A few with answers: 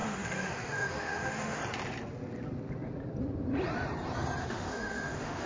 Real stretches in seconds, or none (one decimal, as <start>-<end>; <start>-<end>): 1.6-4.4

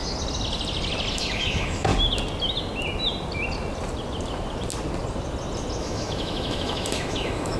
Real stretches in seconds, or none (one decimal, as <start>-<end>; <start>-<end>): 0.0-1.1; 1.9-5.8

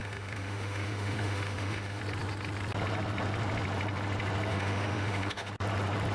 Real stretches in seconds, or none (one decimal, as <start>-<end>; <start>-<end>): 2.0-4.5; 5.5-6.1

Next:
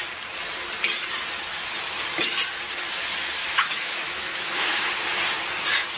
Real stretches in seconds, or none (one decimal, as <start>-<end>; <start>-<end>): 0.0-3.4; 4.9-6.0

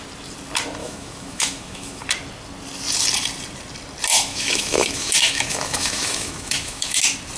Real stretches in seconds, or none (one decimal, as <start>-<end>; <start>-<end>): 0.0-0.8; 2.0-4.1; 7.0-7.4

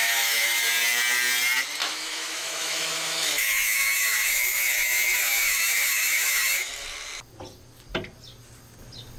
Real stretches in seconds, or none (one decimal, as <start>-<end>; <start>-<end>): 0.6-1.8; 6.7-9.2

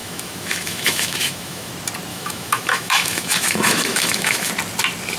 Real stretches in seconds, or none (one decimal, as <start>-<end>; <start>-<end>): 1.7-2.1; 4.5-5.2

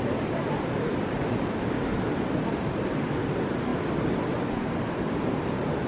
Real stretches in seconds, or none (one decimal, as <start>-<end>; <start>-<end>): 0.0-5.9